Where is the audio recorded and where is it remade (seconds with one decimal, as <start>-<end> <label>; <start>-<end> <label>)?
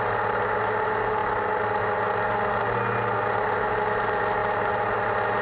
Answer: 0.0-5.4 recorded